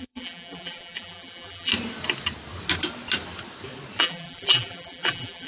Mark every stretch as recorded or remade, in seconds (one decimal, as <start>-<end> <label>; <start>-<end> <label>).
0.0-1.7 remade; 1.7-4.0 recorded; 4.0-5.5 remade